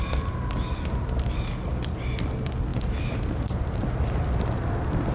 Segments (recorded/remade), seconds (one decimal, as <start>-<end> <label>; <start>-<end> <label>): 0.0-5.1 recorded